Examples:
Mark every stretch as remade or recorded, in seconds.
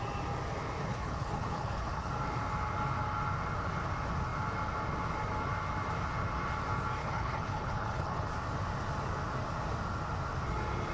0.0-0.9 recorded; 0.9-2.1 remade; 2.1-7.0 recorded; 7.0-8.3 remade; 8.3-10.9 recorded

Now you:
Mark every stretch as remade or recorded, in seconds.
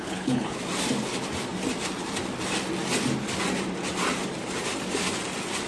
0.0-0.6 remade; 0.6-5.7 recorded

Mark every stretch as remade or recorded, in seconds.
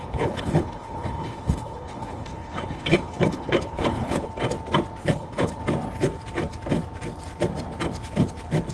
0.0-4.3 remade; 4.3-5.0 recorded; 5.0-5.6 remade; 5.6-8.7 recorded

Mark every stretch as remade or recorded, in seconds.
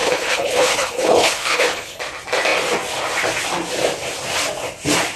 0.0-2.0 remade; 2.0-5.2 recorded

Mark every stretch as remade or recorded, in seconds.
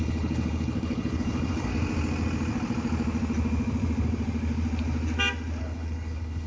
0.0-1.7 remade; 1.7-5.6 recorded; 5.6-6.5 remade